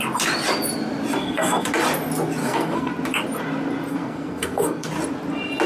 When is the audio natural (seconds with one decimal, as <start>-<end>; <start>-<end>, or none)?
0.0-1.2; 1.7-2.4; 2.9-3.9; 4.9-5.7